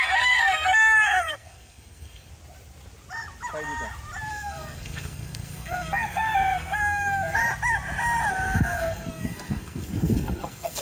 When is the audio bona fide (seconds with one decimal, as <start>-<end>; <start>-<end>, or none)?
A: 2.3-4.3; 7.4-8.3